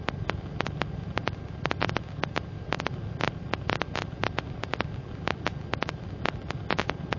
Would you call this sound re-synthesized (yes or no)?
no